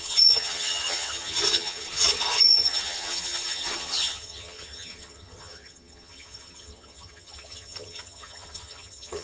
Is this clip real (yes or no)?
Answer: no